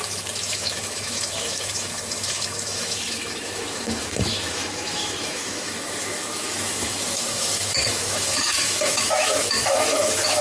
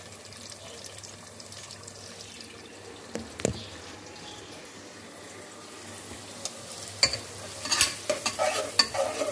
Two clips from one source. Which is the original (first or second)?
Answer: second